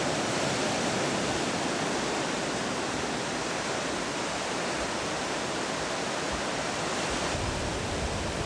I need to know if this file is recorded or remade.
recorded